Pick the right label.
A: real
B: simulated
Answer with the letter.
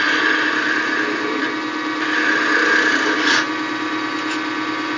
A